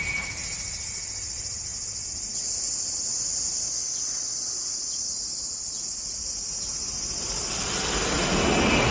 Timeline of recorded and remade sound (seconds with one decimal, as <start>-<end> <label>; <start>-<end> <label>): 0.0-8.9 recorded